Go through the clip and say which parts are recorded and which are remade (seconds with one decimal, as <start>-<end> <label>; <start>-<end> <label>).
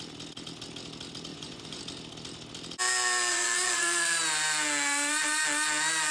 0.0-1.3 recorded; 1.3-1.8 remade; 1.8-3.3 recorded; 3.3-4.2 remade; 4.2-6.1 recorded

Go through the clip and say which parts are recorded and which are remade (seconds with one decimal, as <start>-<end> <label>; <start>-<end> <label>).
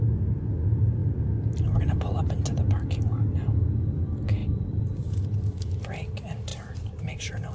0.0-4.4 recorded; 4.4-5.8 remade; 5.8-6.5 recorded; 6.5-7.5 remade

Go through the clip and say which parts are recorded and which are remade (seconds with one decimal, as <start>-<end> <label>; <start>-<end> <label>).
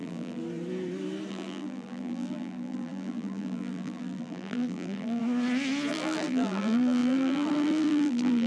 0.0-0.4 remade; 0.4-1.3 recorded; 1.3-5.2 remade; 5.2-5.9 recorded; 5.9-8.5 remade